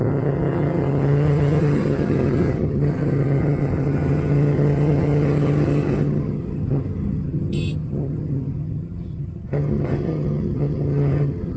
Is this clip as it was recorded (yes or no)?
no